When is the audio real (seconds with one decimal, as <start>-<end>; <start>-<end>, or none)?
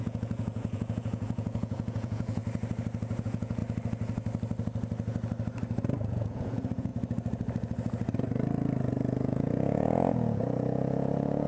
2.4-3.2; 3.6-6.0; 6.9-8.9